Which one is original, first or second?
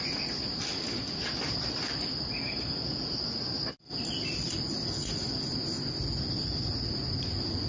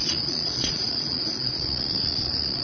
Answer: first